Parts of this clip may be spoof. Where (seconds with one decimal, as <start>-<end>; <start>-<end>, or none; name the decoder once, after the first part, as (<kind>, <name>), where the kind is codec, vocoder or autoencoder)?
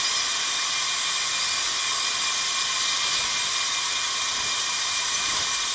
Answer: 0.0-2.9 (vocoder, BigVGAN v2); 3.8-5.7